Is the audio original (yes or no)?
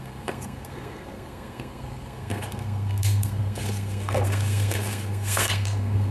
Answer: no